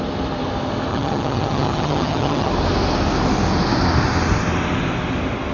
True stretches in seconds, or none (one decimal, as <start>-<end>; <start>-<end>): 0.0-0.9; 2.5-5.5